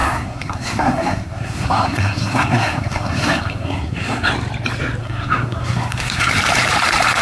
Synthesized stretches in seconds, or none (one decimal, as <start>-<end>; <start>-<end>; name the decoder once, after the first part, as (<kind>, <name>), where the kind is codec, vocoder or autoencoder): 0.0-4.3 (codec, SNAC); 5.0-6.3